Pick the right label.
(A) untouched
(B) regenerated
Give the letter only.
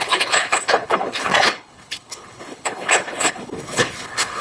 B